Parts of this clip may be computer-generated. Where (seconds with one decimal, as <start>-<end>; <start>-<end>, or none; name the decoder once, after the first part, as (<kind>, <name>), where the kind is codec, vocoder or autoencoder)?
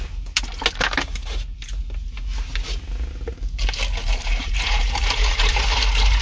4.0-6.2 (vocoder, BigVGAN v2)